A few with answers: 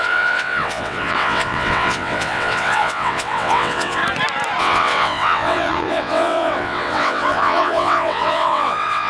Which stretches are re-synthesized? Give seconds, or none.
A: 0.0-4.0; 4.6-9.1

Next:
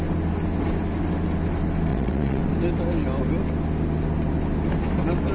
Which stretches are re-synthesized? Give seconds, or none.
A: 1.9-2.5

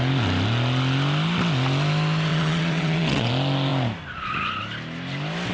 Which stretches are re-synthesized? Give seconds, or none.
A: 2.3-3.3

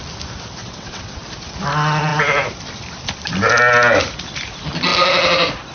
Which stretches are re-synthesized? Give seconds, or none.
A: 0.6-1.2